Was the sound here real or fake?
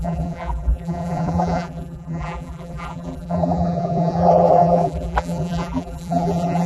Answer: fake